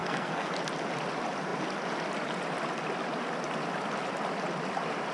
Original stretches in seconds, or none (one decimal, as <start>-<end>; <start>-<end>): 0.5-5.1